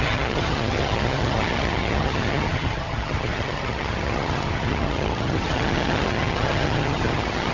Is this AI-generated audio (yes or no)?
yes